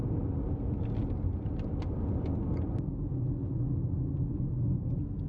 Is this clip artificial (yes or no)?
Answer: no